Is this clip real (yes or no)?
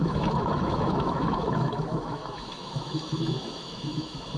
no